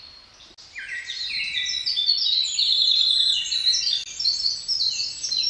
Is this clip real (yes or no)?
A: yes